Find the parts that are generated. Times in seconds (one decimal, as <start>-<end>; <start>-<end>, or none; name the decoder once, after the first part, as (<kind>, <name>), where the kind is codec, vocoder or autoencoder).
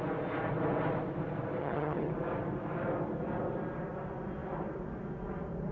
1.6-2.1 (vocoder, HiFi-GAN)